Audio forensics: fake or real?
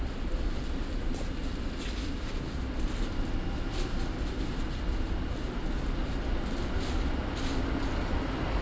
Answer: real